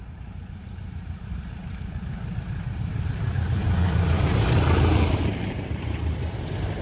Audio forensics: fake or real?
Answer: fake